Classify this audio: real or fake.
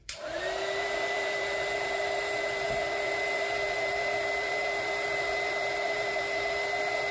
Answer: fake